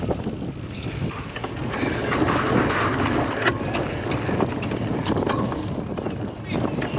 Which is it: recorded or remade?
recorded